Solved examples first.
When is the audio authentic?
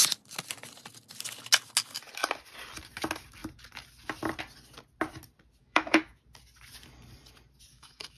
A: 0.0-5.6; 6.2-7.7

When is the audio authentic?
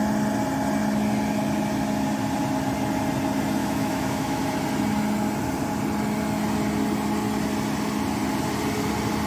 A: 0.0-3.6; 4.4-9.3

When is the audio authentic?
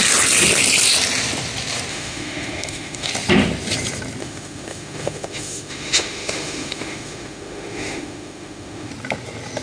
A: 0.0-1.9; 3.1-4.2; 8.9-9.6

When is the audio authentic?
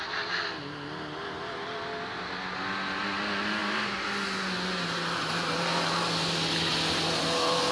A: 0.0-7.7